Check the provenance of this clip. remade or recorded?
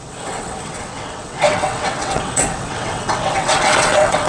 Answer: remade